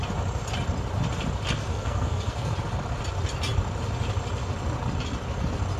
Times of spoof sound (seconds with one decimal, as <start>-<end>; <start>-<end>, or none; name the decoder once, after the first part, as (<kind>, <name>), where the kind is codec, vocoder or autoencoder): 1.7-2.5 (codec, SNAC)